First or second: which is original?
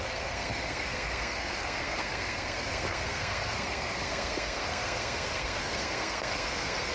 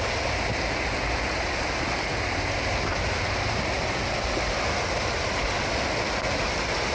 second